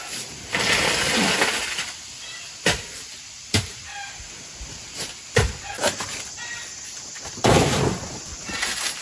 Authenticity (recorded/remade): recorded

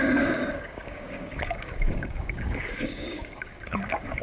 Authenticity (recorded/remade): remade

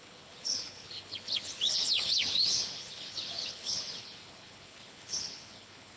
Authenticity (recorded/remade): remade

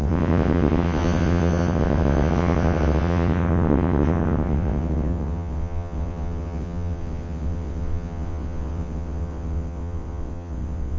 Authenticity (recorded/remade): remade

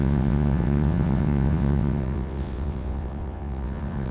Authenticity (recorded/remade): remade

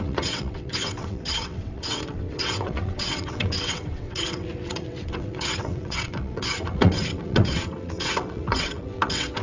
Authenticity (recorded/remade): remade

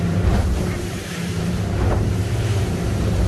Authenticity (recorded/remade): remade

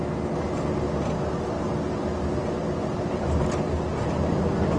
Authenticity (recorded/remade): recorded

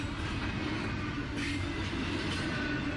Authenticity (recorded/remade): recorded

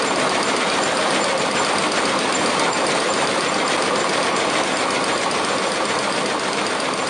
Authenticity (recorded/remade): recorded